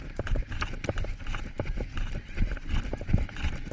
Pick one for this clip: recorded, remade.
recorded